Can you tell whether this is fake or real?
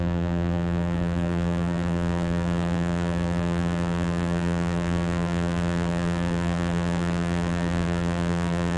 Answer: fake